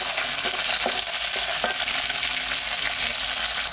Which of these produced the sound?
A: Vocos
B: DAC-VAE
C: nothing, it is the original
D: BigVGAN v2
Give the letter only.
C